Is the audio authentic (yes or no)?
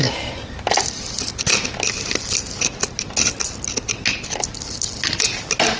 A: yes